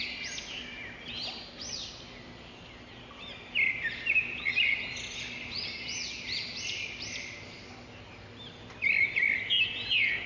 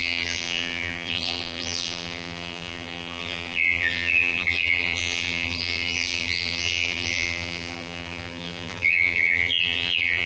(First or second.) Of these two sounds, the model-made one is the second